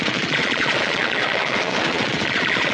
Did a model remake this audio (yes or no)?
yes